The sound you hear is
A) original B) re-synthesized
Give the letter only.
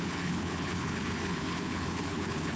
B